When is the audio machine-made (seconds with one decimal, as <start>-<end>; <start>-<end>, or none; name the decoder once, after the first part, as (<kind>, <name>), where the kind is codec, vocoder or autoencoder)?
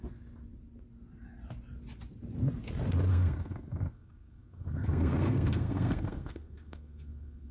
3.1-7.5 (codec, SNAC)